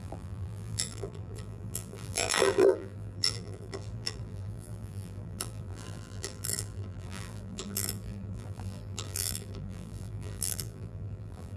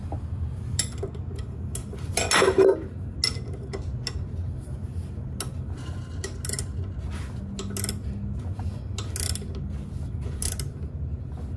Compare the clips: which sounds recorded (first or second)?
second